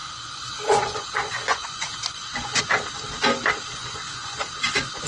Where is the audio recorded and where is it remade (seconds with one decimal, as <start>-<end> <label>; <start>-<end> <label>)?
0.0-2.6 remade; 2.6-3.8 recorded; 3.8-4.4 remade; 4.4-5.1 recorded